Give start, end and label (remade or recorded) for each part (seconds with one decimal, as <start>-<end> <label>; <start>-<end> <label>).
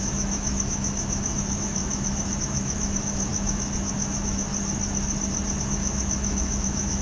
0.0-4.5 remade; 4.5-5.6 recorded; 5.6-7.0 remade